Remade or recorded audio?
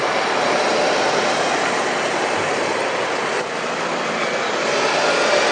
recorded